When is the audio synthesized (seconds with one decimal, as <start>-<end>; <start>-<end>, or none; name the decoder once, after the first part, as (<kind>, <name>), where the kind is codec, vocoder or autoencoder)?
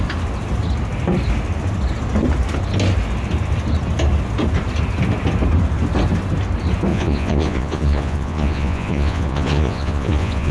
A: 6.9-10.5 (vocoder, Vocos)